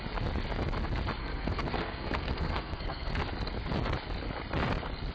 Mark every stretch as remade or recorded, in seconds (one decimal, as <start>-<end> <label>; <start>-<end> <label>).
0.0-1.2 recorded; 1.2-3.1 remade; 3.1-5.1 recorded